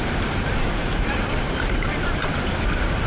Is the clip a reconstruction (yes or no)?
yes